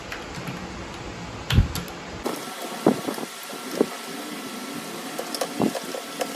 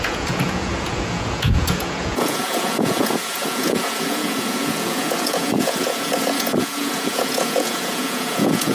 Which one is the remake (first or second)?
second